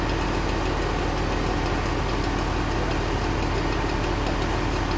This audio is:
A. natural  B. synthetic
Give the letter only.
A